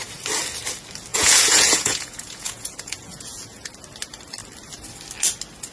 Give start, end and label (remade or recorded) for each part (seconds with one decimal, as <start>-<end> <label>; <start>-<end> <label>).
0.0-1.1 recorded; 1.1-3.7 remade; 3.7-5.7 recorded